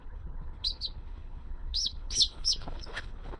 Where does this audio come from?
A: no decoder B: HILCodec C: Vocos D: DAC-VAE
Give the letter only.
B